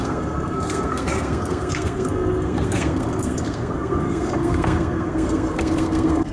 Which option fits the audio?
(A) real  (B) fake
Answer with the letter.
B